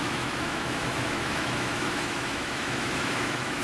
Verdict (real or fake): fake